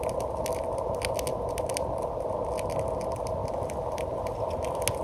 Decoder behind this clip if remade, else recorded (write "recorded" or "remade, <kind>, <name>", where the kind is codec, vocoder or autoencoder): recorded